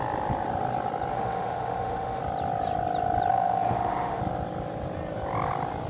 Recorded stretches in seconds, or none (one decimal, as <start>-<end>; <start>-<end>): 0.0-1.1; 2.2-3.3; 4.2-5.9